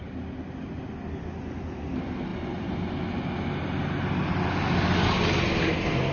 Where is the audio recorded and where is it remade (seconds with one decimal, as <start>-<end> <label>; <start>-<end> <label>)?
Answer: 0.0-6.1 recorded